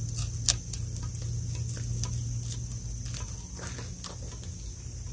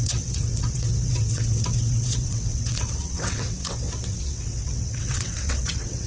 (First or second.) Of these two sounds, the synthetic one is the second